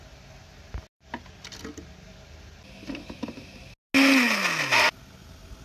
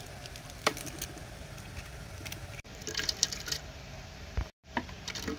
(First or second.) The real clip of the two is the first